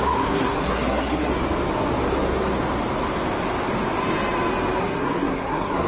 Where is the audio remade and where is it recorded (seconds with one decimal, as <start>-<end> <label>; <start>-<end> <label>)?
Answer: 0.0-1.3 remade; 1.3-4.8 recorded; 4.8-5.9 remade